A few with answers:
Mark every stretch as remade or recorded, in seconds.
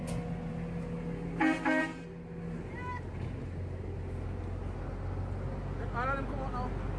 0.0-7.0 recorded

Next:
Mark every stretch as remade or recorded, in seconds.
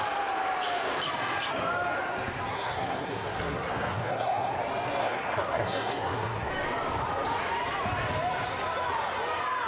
0.0-2.5 recorded; 2.5-4.5 remade; 4.5-5.0 recorded; 5.0-6.5 remade; 6.5-9.7 recorded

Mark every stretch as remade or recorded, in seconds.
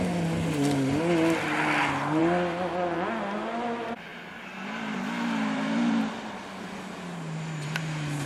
0.0-8.3 recorded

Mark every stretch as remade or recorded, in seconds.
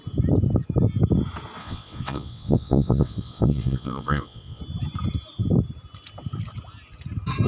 0.0-1.6 recorded; 1.6-4.6 remade; 4.6-7.5 recorded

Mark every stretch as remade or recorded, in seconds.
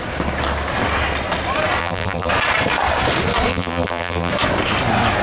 0.0-1.8 recorded; 1.8-2.3 remade; 2.3-3.5 recorded; 3.5-4.3 remade; 4.3-5.2 recorded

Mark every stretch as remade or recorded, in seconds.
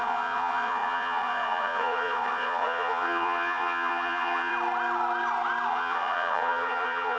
0.0-4.5 remade; 4.5-5.7 recorded; 5.7-7.2 remade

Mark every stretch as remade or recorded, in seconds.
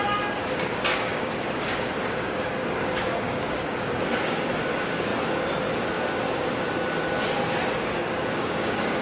0.0-5.1 remade; 5.1-7.7 recorded; 7.7-9.0 remade